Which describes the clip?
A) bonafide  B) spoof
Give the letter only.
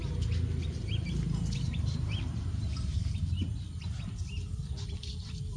A